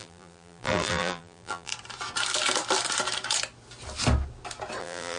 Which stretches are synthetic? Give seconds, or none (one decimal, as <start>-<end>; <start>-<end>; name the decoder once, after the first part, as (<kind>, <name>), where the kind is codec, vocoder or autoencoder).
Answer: 0.0-1.7 (vocoder, BigVGAN v2); 4.8-5.2